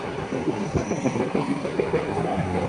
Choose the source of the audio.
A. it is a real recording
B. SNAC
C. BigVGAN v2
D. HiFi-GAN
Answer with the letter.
B